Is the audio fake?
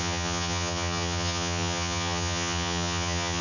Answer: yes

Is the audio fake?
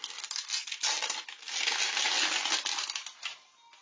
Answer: no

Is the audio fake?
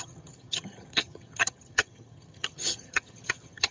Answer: yes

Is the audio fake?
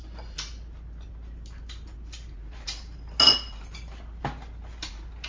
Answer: no